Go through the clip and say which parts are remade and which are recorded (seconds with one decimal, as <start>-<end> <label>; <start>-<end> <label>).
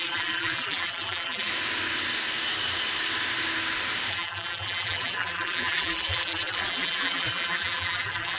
0.0-1.5 remade; 1.5-4.1 recorded; 4.1-8.4 remade